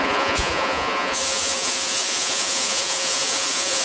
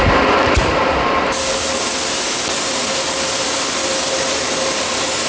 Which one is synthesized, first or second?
first